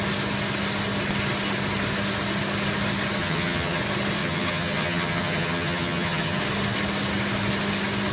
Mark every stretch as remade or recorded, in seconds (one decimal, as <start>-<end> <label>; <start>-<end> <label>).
0.0-3.2 recorded; 3.2-3.8 remade; 3.8-4.2 recorded; 4.2-6.4 remade; 6.4-8.1 recorded